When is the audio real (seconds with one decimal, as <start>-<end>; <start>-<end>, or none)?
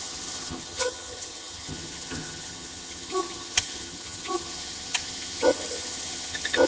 none